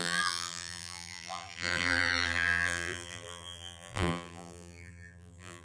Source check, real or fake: fake